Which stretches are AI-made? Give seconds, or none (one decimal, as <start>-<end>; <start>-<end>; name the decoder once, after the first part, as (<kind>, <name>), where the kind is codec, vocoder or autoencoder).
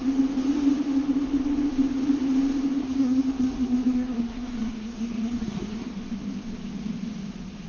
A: 2.8-5.9 (codec, SNAC)